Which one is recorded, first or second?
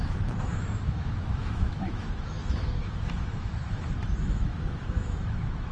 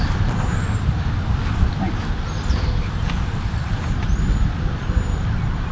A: second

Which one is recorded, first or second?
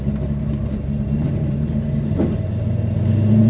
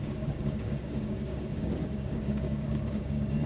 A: first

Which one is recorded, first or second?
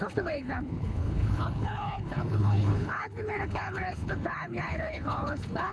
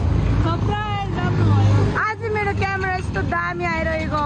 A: second